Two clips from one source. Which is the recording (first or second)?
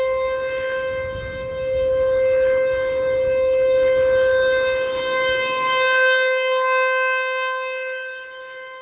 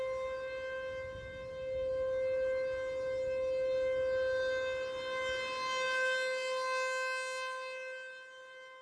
second